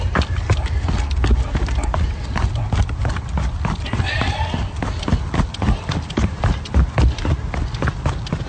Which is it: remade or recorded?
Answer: recorded